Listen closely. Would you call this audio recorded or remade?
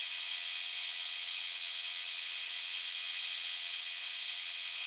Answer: remade